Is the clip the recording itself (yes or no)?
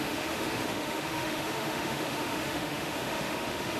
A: no